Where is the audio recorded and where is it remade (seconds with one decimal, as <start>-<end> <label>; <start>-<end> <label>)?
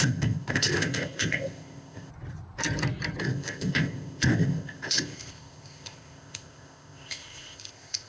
0.0-2.1 remade; 2.1-3.2 recorded; 3.2-8.1 remade